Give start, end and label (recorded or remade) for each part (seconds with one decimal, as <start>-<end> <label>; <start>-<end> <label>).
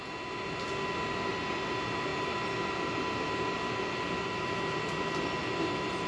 0.0-6.1 recorded